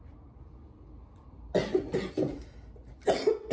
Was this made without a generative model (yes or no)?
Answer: yes